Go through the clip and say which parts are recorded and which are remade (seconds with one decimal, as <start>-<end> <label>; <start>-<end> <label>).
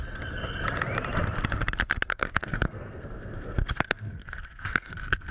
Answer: 0.0-2.1 recorded; 2.1-5.3 remade